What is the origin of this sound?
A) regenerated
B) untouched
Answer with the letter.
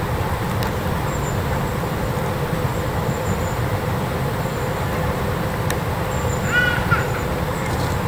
B